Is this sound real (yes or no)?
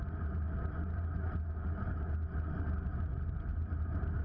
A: yes